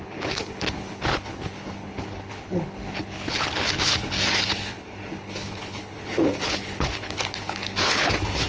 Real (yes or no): no